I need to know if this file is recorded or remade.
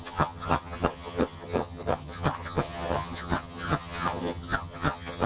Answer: remade